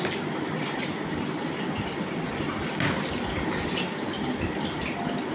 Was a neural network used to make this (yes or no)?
no